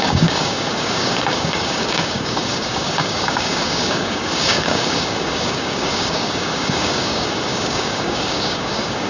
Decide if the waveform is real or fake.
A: fake